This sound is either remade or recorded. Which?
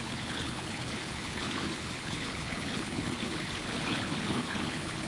remade